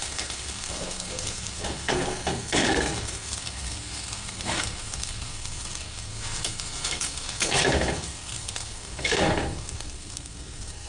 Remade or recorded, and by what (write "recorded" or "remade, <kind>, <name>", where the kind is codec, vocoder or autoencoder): remade, codec, SNAC